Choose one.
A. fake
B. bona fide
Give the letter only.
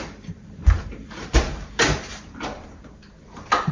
A